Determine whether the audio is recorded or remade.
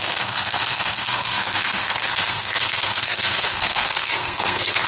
remade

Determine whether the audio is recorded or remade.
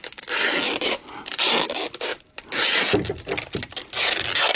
recorded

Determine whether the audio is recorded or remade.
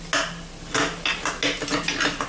recorded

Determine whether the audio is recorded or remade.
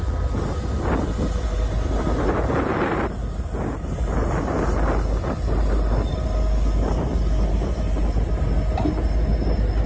recorded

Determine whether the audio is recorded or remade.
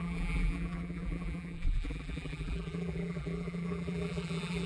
remade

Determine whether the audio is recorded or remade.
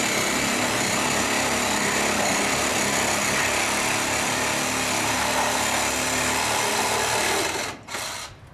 recorded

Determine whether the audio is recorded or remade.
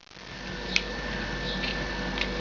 recorded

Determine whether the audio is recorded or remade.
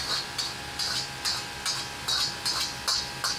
recorded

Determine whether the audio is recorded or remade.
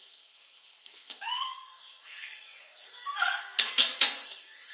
remade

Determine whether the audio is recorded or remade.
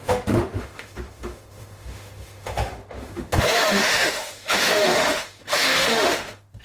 remade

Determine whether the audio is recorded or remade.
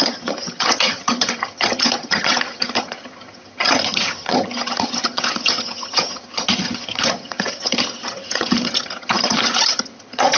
remade